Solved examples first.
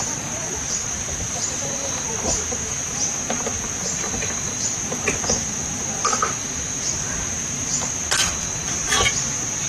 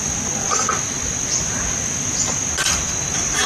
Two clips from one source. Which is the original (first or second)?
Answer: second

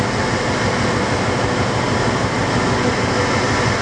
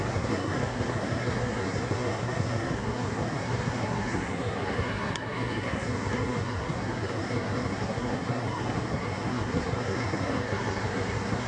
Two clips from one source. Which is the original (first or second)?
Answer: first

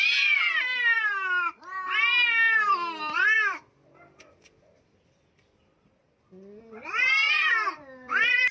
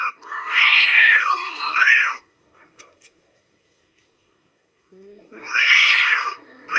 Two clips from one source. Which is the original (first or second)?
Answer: first